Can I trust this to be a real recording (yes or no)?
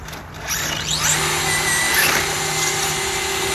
yes